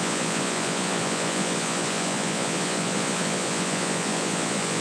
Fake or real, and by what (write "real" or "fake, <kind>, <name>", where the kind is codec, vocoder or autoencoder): fake, vocoder, Vocos